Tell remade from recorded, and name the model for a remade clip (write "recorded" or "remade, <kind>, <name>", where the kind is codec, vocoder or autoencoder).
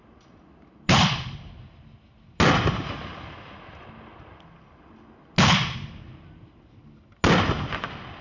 recorded